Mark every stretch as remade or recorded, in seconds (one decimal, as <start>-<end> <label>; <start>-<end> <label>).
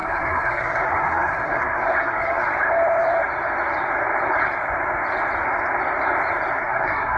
0.0-2.5 remade; 2.5-6.6 recorded; 6.6-7.2 remade